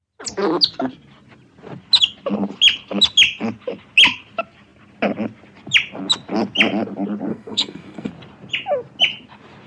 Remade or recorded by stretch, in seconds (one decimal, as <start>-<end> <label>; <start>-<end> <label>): 0.0-7.3 recorded; 7.3-8.1 remade; 8.1-9.7 recorded